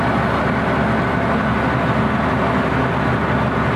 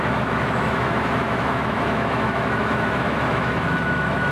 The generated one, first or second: second